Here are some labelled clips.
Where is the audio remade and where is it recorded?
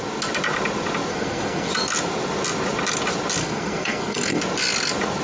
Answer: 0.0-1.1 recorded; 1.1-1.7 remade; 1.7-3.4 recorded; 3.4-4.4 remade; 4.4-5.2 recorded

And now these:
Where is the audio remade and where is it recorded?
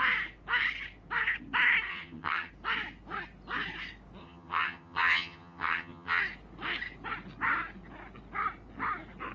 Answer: 0.0-1.9 recorded; 1.9-2.5 remade; 2.5-4.2 recorded; 4.2-6.2 remade; 6.2-9.3 recorded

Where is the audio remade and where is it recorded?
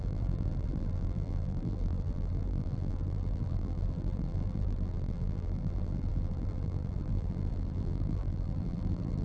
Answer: 0.0-9.2 remade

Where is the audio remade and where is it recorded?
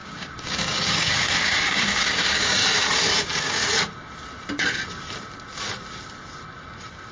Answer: 0.0-2.6 remade; 2.6-3.2 recorded; 3.2-3.6 remade; 3.6-7.1 recorded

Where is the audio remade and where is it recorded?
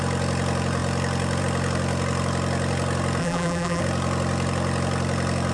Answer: 0.0-3.2 recorded; 3.2-3.8 remade; 3.8-5.5 recorded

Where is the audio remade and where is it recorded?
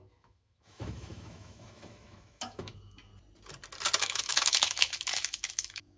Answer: 0.0-3.1 remade; 3.1-4.0 recorded; 4.0-6.0 remade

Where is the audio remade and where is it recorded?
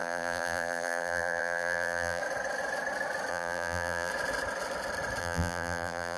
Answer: 0.0-2.2 remade; 2.2-3.3 recorded; 3.3-4.1 remade; 4.1-5.2 recorded; 5.2-6.2 remade